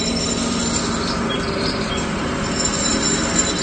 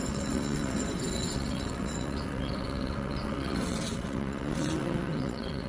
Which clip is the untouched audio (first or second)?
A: first